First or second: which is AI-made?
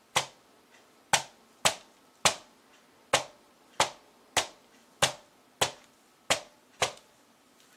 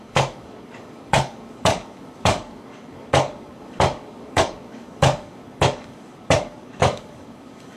second